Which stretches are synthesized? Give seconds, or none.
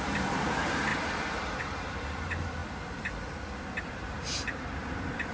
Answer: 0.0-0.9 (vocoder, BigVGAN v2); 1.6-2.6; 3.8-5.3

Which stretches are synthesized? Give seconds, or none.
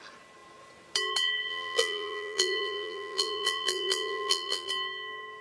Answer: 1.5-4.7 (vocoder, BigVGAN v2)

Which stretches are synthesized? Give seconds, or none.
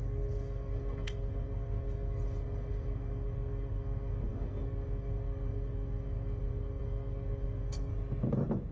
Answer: 0.0-7.9 (codec, SNAC)